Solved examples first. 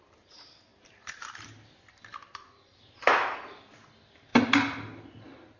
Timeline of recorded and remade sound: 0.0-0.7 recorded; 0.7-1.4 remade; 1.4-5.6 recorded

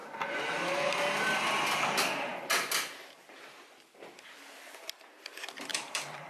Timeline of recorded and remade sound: 0.0-5.7 recorded; 5.7-6.3 remade